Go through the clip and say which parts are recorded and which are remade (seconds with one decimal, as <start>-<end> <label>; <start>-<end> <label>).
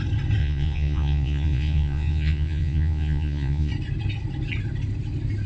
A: 0.0-0.4 recorded; 0.4-3.7 remade; 3.7-5.5 recorded